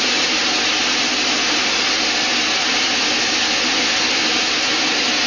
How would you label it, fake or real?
real